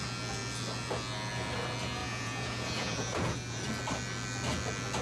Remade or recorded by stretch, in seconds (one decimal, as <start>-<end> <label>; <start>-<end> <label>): 0.0-2.0 recorded; 2.0-3.6 remade; 3.6-5.0 recorded